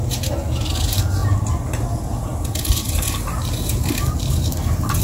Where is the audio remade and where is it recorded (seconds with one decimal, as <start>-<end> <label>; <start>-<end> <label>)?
0.0-5.0 recorded